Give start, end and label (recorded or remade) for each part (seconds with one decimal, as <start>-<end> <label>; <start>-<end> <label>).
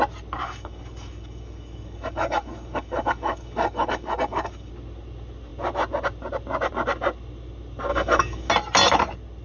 0.0-0.4 recorded; 0.4-4.7 remade; 4.7-7.9 recorded; 7.9-8.5 remade; 8.5-9.4 recorded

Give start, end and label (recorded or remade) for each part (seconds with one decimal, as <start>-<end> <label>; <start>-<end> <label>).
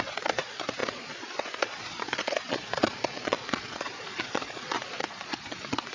0.0-5.9 remade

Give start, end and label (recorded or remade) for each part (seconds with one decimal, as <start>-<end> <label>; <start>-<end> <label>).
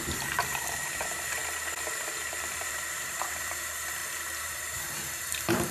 0.0-1.4 remade; 1.4-2.2 recorded; 2.2-5.7 remade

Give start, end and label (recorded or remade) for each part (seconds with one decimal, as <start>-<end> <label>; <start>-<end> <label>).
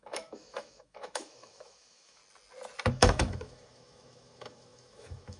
0.0-2.2 remade; 2.2-2.9 recorded; 2.9-5.4 remade